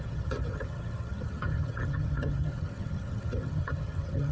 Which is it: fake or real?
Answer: fake